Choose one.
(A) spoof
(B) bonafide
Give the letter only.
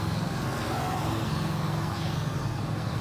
A